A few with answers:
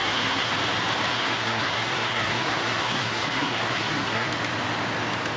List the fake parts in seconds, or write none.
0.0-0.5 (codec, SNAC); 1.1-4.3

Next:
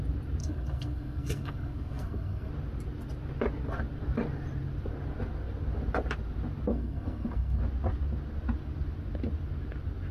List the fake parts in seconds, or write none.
0.4-2.5 (codec, SNAC); 6.7-7.6

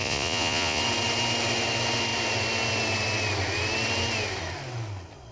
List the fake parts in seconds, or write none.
0.0-0.8 (vocoder, Vocos)

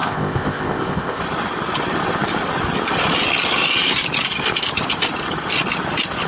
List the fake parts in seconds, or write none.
0.0-1.2 (codec, ZipCodec)

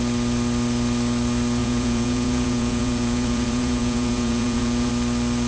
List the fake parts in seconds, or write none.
1.6-4.9 (vocoder, Vocos)

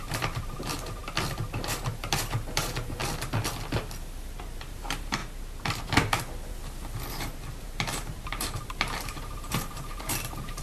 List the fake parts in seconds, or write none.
0.0-1.0 (vocoder, BigVGAN v2); 1.6-3.0; 4.4-5.2; 5.8-6.6; 7.1-10.6

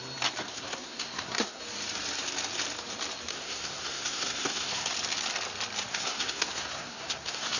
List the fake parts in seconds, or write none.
0.5-1.6 (codec, SNAC); 3.3-4.9; 5.9-7.6

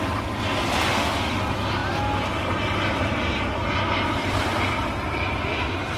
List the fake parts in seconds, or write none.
0.9-1.4 (autoencoder, DAC-VAE)